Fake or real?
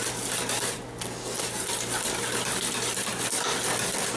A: real